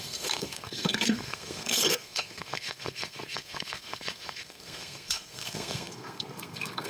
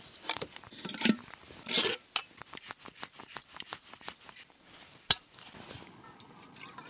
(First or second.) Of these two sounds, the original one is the second